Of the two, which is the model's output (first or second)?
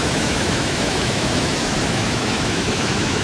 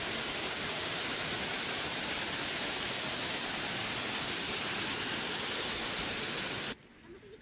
first